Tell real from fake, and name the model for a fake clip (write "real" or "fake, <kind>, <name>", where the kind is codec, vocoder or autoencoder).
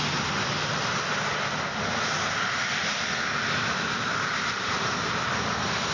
real